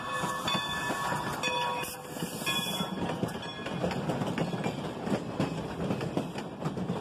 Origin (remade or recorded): recorded